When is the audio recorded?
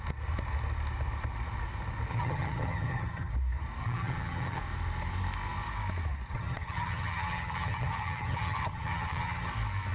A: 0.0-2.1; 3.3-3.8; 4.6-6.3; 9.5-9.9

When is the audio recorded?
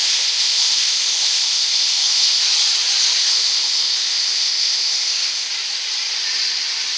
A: 2.4-3.2; 5.5-7.0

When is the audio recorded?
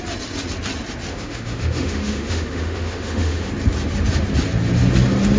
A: 0.0-1.1; 3.5-5.4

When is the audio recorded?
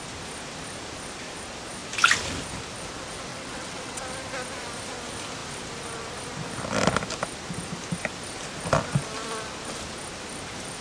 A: 0.0-3.3; 4.0-10.8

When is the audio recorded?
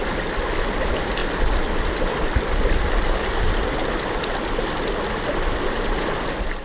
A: 0.0-6.6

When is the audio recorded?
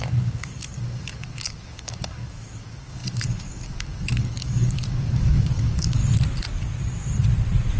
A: 6.0-7.8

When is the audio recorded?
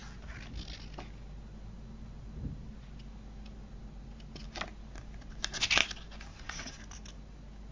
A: 0.0-6.3; 6.8-7.7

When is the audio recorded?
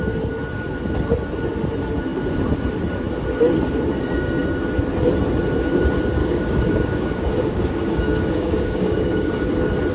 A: 0.0-6.2; 9.5-9.9